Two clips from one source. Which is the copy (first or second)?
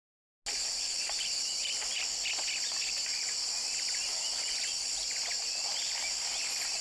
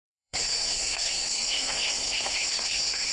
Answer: second